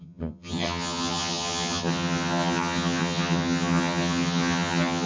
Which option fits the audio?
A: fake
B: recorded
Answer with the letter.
A